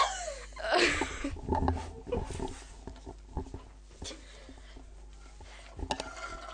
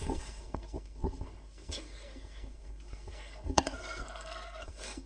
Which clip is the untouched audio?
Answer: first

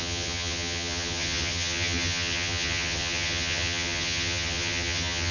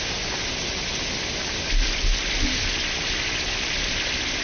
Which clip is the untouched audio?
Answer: second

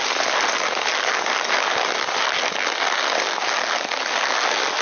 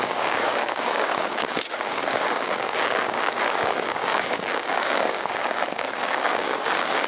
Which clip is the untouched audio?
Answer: first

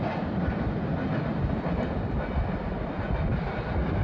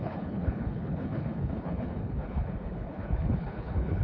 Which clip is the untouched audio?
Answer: first